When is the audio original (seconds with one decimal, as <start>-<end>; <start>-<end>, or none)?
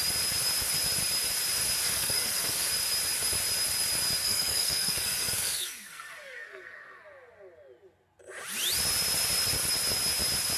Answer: 0.0-1.8; 2.7-4.2; 7.0-10.6